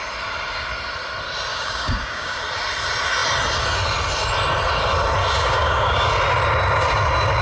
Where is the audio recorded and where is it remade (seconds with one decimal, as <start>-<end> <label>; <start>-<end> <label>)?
0.0-1.5 recorded; 1.5-2.4 remade; 2.4-5.2 recorded; 5.2-6.1 remade; 6.1-7.4 recorded